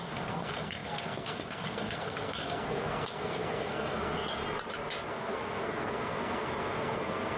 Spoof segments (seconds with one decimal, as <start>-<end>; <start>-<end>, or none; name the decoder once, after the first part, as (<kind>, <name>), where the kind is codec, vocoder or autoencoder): 0.0-4.4 (codec, SNAC); 5.1-7.4